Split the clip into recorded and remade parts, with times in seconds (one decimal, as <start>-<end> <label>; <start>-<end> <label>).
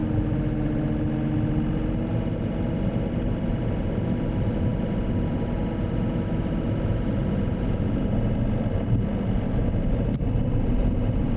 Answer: 0.0-11.4 recorded